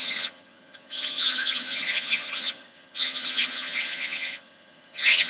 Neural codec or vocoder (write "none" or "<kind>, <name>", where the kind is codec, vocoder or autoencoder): vocoder, HiFi-GAN